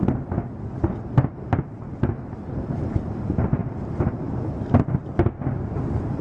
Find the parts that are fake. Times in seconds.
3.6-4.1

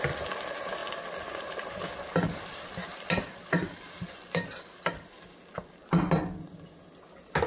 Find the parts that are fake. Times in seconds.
none

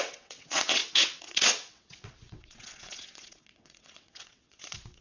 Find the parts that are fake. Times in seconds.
0.0-5.0

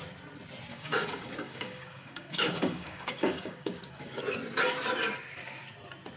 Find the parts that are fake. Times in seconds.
0.7-4.2

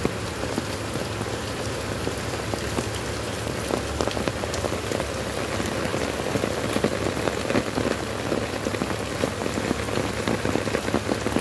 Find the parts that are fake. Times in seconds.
none